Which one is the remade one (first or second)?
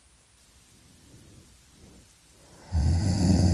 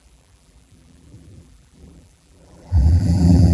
second